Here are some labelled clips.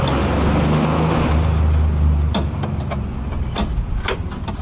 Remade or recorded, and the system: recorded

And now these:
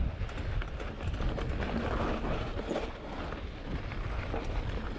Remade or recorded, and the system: recorded